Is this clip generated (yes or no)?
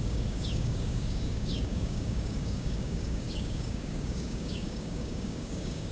yes